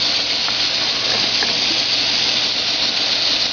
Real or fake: real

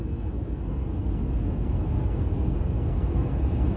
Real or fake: fake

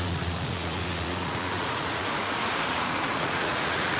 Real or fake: fake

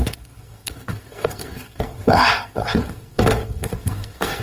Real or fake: fake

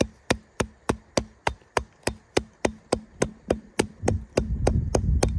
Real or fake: real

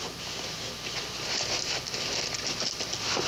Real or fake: real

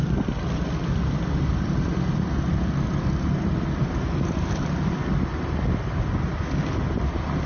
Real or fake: real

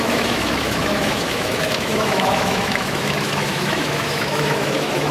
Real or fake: fake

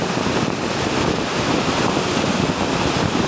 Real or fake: real